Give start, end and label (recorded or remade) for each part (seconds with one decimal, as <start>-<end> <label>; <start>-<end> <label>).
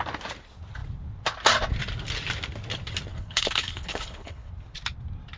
0.0-3.1 recorded; 3.1-4.5 remade; 4.5-5.4 recorded